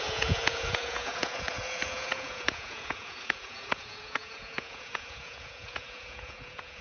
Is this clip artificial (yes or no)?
yes